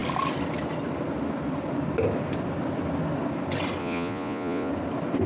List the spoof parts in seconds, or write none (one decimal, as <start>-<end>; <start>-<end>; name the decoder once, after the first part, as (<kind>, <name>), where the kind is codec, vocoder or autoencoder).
3.8-4.7 (vocoder, Vocos)